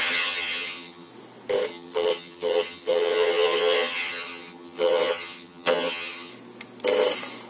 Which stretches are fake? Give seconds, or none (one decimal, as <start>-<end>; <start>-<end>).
0.0-1.1; 1.7-6.3

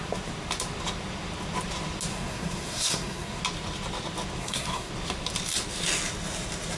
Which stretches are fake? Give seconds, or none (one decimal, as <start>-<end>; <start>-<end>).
2.1-3.4; 4.4-4.9

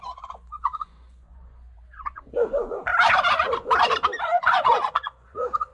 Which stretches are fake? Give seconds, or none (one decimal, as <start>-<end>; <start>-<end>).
0.0-2.9; 4.2-5.7

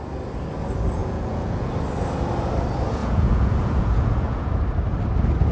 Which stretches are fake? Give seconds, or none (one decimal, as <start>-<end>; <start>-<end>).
1.0-1.7; 3.0-4.6

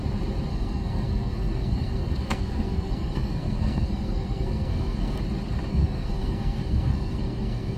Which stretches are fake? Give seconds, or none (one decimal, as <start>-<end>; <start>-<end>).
0.5-5.2; 5.7-7.8

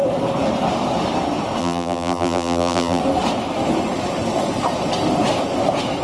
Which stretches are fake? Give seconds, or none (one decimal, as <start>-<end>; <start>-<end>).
1.6-3.0

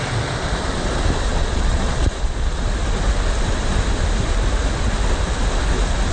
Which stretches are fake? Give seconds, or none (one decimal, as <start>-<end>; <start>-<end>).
1.3-2.6